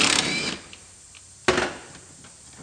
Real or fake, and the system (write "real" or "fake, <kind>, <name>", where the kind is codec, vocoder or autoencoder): real